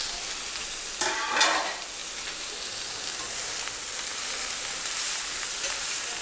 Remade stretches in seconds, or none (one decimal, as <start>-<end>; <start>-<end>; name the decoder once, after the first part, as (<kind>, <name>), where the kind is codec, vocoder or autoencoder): 4.1-6.2 (vocoder, BigVGAN v2)